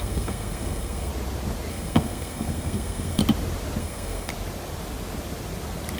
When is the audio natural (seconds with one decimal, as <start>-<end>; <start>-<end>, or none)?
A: 1.1-1.7; 3.2-3.8; 4.3-6.0